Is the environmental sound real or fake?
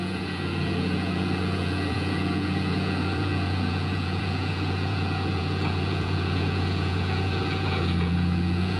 fake